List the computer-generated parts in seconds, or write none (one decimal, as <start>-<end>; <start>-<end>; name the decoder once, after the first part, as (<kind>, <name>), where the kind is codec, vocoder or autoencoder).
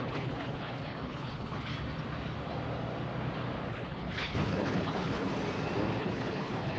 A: 0.0-1.7 (codec, HILCodec); 3.7-5.3; 6.0-6.8